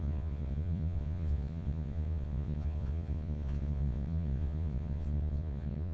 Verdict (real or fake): fake